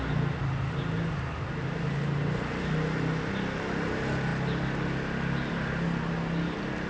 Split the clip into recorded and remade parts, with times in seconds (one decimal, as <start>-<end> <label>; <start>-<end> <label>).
0.0-6.9 recorded